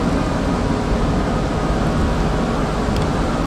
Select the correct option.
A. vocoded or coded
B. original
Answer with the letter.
B